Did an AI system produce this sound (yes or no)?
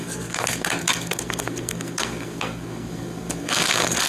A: yes